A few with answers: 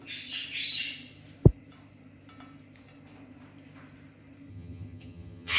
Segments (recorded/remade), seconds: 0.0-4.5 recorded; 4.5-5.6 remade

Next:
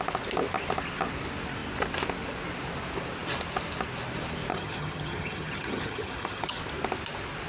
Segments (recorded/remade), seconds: 0.0-4.5 recorded; 4.5-6.6 remade; 6.6-7.5 recorded

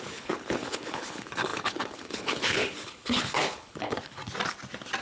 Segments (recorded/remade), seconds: 0.0-4.2 remade; 4.2-5.0 recorded

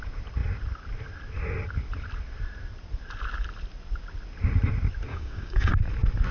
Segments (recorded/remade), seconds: 0.0-5.1 recorded; 5.1-5.7 remade; 5.7-6.3 recorded

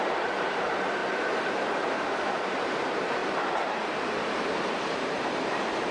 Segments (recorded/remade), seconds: 0.0-1.0 remade; 1.0-1.5 recorded; 1.5-5.9 remade